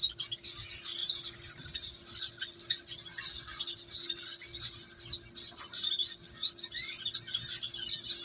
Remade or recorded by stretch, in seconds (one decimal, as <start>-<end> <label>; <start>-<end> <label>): 0.0-8.2 recorded